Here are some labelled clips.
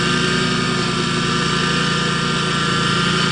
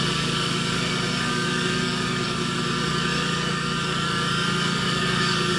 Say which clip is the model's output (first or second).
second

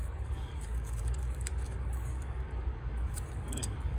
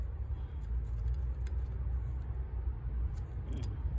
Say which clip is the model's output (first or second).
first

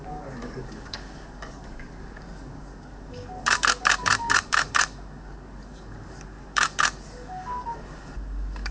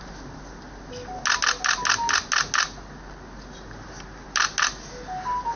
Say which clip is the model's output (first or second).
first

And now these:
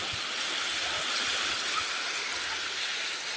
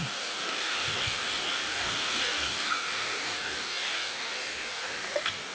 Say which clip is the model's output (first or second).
second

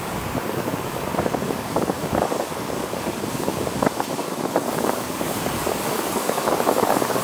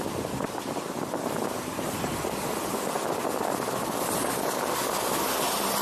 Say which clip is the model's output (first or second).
first